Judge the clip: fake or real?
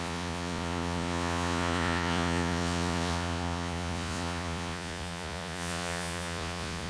fake